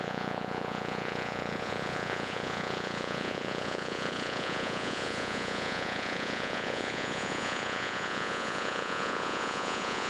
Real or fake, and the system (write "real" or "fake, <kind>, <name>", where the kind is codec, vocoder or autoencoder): fake, vocoder, Vocos